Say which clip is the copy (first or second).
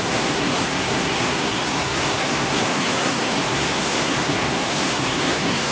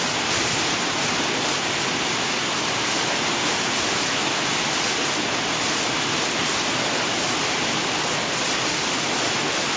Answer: first